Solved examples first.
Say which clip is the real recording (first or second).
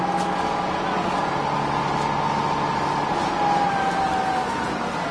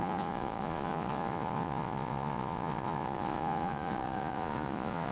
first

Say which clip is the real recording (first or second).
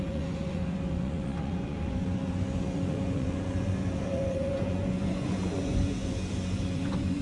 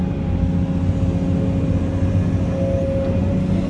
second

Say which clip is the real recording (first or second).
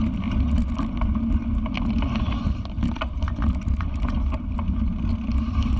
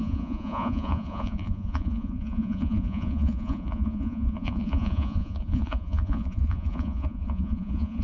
first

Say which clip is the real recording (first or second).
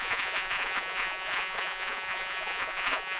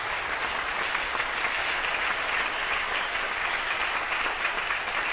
second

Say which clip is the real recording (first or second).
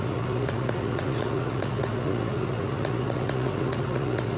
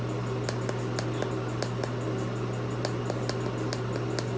second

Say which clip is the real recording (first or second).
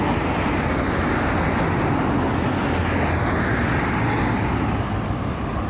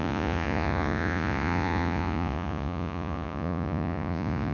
first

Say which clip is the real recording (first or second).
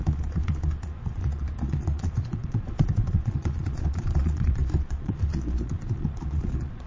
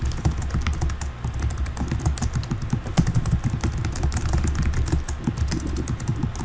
second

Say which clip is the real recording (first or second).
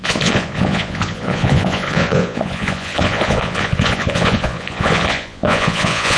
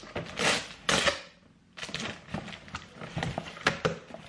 second